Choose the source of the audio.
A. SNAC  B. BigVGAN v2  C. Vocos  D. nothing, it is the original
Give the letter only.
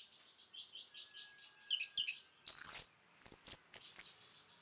D